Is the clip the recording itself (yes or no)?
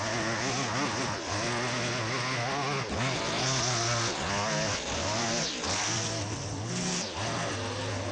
yes